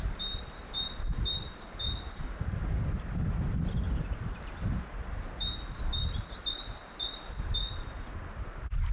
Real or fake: real